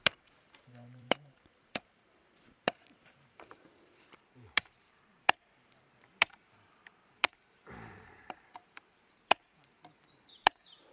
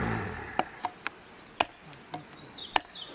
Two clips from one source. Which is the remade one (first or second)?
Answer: first